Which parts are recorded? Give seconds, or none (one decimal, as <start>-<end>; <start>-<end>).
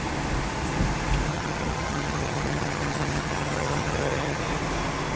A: 0.0-1.3; 4.4-5.2